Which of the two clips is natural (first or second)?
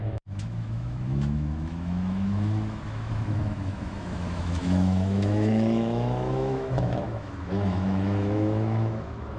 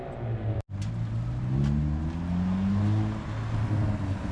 second